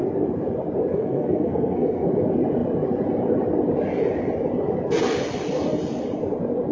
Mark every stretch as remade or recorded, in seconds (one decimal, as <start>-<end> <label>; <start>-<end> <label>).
0.0-0.9 recorded; 0.9-2.1 remade; 2.1-6.7 recorded